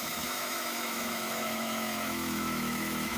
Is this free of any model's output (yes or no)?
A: no